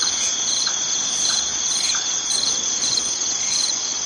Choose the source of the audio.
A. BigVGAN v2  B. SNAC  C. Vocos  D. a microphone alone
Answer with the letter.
C